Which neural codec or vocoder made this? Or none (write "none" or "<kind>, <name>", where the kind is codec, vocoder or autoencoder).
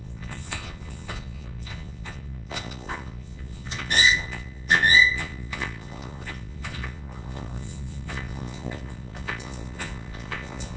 vocoder, Vocos